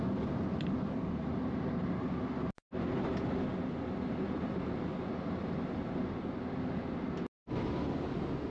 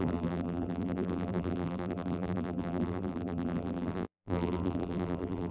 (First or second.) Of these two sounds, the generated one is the second